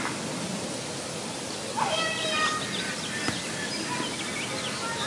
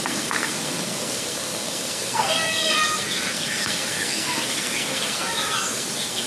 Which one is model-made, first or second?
second